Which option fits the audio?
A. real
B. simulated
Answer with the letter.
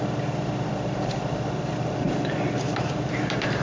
B